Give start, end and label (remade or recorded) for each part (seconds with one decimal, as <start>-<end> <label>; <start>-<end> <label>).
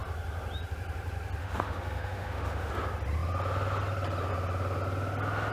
0.0-1.4 recorded; 1.4-2.7 remade; 2.7-5.5 recorded